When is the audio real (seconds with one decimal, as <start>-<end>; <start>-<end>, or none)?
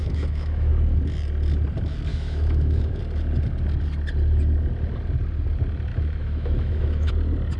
0.7-2.1; 3.0-5.9; 7.1-7.6